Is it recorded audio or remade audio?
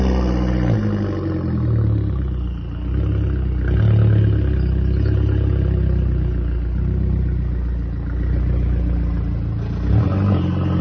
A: recorded